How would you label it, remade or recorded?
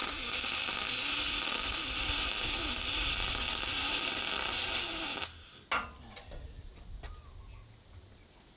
recorded